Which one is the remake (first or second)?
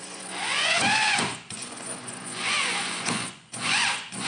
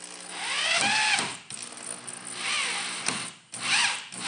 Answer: first